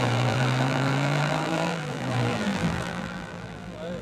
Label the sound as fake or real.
fake